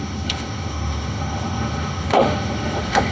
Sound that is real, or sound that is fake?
fake